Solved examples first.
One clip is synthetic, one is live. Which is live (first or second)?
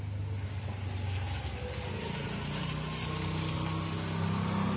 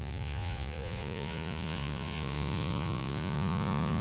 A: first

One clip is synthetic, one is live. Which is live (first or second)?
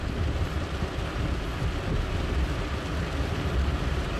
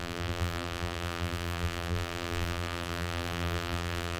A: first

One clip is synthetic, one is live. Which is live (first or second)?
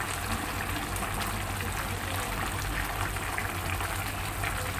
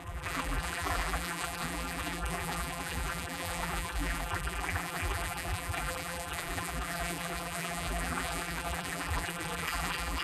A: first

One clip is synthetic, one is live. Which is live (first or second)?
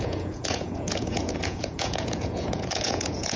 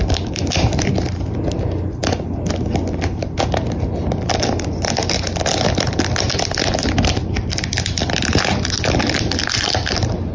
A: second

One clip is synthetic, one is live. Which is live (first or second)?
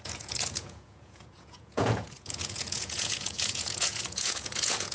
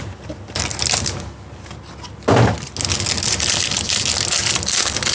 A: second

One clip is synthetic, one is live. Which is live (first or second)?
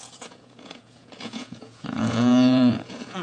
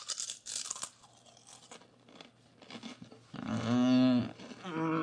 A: second